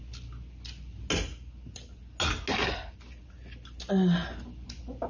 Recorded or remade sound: recorded